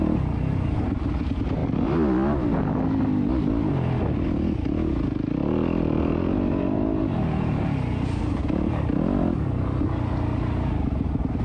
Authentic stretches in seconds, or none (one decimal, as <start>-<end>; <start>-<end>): 0.0-11.4